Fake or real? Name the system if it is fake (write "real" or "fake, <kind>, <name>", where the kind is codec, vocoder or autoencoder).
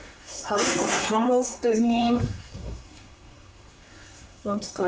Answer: fake, codec, SNAC